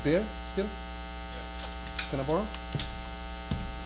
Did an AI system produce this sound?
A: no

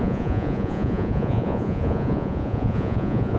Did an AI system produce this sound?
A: yes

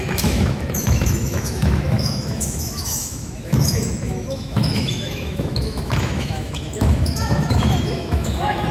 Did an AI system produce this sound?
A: yes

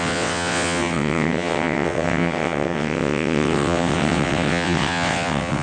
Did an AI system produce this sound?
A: yes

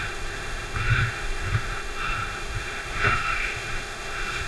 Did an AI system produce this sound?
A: yes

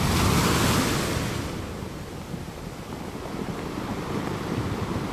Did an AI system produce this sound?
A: no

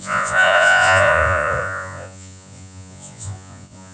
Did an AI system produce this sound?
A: yes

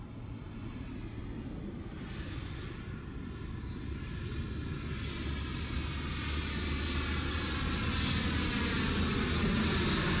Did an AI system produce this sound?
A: no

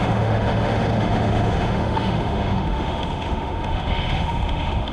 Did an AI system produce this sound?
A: yes